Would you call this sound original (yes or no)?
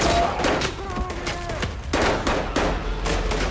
yes